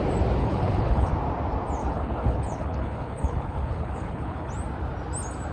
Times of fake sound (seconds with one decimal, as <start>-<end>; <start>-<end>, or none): 0.4-1.1; 1.8-4.5